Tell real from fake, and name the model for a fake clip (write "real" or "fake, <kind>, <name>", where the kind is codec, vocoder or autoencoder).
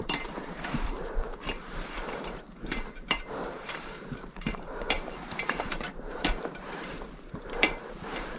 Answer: fake, vocoder, BigVGAN v2